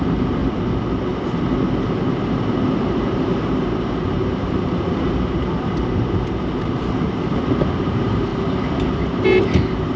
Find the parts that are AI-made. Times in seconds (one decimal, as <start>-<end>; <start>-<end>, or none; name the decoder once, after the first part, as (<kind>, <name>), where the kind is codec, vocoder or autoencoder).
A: 0.0-0.4 (vocoder, BigVGAN v2); 1.8-8.3; 9.0-10.0